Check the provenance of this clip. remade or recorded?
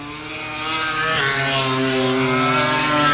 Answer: recorded